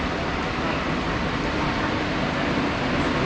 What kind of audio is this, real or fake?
real